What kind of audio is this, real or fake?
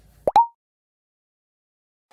real